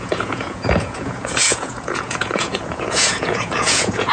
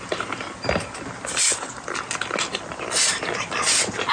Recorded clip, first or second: second